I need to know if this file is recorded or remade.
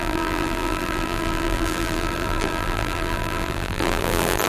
remade